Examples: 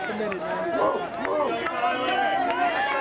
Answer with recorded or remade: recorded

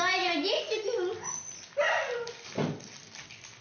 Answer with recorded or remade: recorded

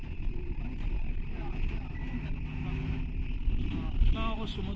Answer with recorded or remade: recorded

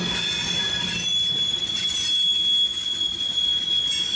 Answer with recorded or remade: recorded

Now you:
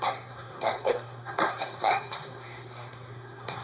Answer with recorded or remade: remade